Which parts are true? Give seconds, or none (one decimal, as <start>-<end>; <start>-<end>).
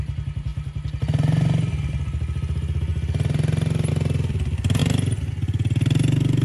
0.0-6.4